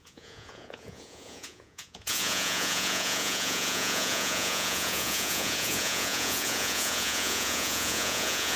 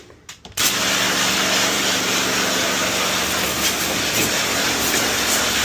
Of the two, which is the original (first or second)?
second